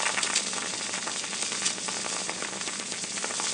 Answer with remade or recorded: recorded